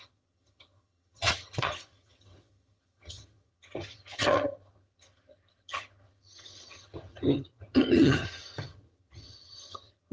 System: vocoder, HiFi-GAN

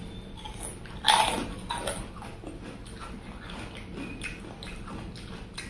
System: none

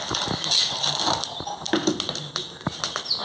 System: none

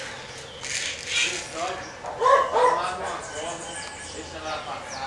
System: none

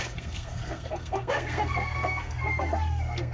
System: codec, SNAC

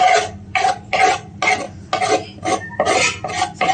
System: none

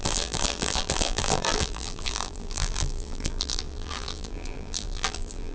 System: vocoder, BigVGAN v2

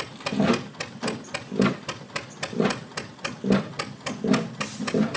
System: none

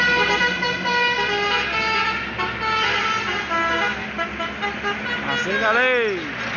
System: none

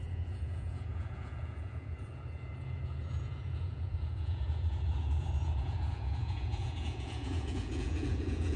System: vocoder, Vocos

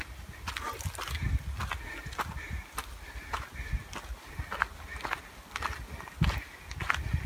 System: none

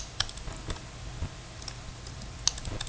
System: none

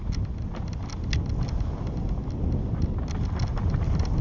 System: none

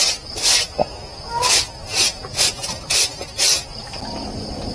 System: none